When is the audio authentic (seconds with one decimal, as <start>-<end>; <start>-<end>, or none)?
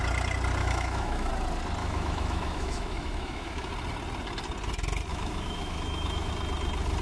0.0-0.6; 1.3-1.8; 3.7-5.1; 6.3-7.0